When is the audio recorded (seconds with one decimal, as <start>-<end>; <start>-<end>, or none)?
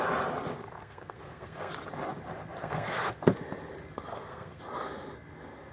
0.0-0.5; 1.7-2.6; 3.2-4.1; 4.6-5.7